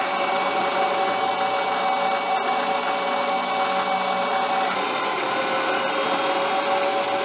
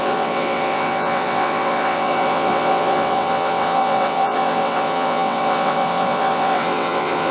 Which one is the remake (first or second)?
second